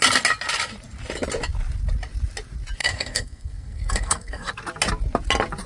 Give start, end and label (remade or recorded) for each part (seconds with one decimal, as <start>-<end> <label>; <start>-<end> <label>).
0.0-2.8 recorded; 2.8-4.5 remade; 4.5-5.7 recorded